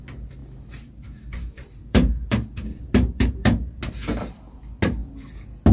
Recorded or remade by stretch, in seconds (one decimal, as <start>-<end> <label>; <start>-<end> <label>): 0.0-0.4 recorded; 0.4-3.8 remade; 3.8-5.7 recorded

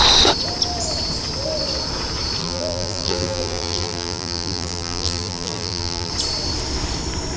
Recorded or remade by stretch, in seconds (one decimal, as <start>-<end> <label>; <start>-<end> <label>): 0.0-2.4 recorded; 2.4-6.1 remade; 6.1-7.4 recorded

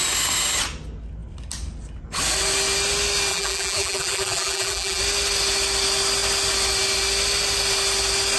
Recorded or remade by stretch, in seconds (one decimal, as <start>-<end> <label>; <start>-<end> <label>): 0.0-3.3 recorded; 3.3-5.0 remade; 5.0-8.4 recorded

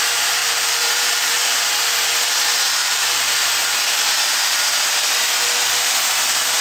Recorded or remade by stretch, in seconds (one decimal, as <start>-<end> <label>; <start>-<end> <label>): 0.0-0.4 recorded; 0.4-1.3 remade; 1.3-2.8 recorded; 2.8-3.3 remade; 3.3-6.6 recorded